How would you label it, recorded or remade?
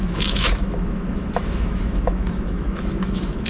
remade